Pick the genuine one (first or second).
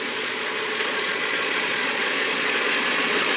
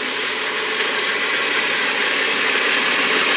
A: second